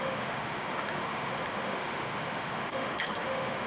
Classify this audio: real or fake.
fake